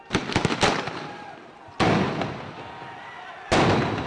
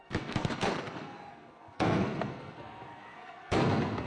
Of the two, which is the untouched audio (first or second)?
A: first